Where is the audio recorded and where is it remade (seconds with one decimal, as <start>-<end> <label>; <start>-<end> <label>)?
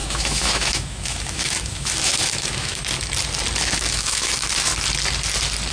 0.0-2.8 remade; 2.8-3.6 recorded; 3.6-4.7 remade; 4.7-5.7 recorded